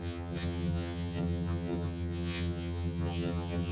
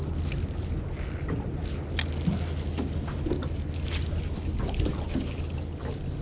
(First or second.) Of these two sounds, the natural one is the second